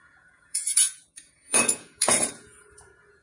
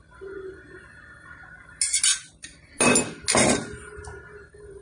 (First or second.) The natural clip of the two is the second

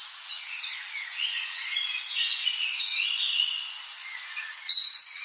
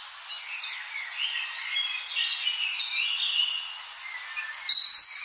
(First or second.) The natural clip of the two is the second